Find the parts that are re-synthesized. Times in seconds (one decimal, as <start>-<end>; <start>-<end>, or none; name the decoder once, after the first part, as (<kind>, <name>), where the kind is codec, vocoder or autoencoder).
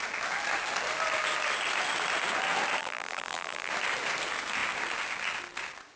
2.8-3.7 (vocoder, BigVGAN v2)